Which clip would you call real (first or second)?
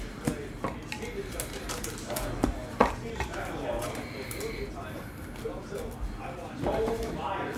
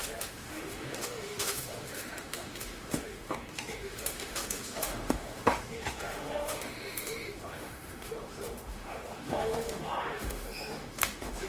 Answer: first